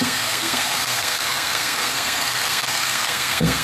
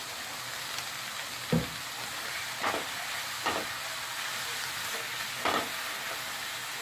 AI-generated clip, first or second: first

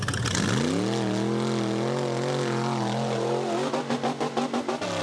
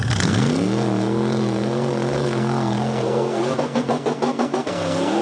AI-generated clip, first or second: second